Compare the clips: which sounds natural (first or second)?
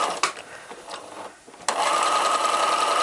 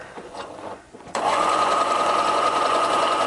first